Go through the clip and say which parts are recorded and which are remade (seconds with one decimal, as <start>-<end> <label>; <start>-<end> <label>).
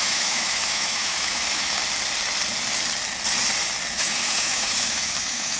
0.0-1.8 remade; 1.8-3.9 recorded; 3.9-5.6 remade